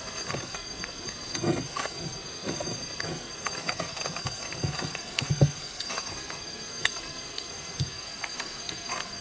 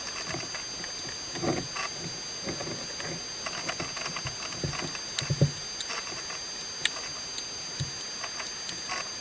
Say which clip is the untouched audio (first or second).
second